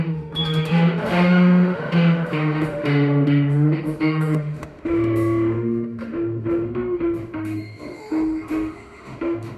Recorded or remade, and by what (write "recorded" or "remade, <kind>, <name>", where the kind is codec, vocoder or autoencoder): remade, autoencoder, DAC-VAE